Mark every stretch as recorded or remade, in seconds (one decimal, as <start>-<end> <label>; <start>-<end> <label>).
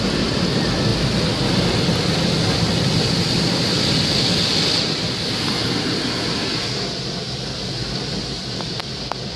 0.0-8.1 recorded; 8.1-8.8 remade; 8.8-9.4 recorded